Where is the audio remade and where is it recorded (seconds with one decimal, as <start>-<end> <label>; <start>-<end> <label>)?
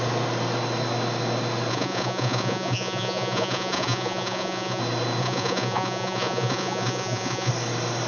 0.0-1.7 recorded; 1.7-4.8 remade; 4.8-5.2 recorded; 5.2-7.5 remade; 7.5-8.1 recorded